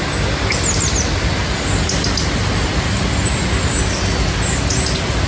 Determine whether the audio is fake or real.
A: real